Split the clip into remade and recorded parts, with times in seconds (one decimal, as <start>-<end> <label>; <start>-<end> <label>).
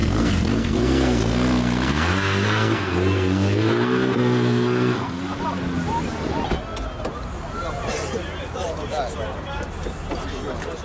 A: 0.0-5.2 remade; 5.2-10.8 recorded